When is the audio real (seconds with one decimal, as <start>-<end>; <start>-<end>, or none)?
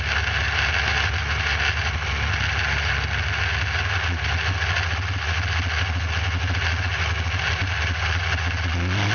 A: 0.0-9.1